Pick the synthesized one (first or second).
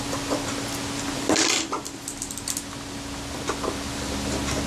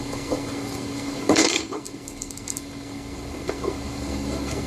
second